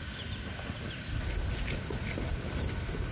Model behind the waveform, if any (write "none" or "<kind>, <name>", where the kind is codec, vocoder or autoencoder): none